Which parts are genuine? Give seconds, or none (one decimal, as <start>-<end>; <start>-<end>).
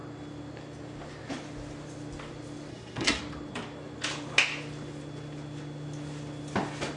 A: 0.0-2.7; 3.2-7.0